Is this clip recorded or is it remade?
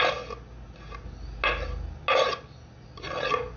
recorded